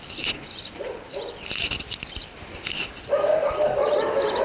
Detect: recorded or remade recorded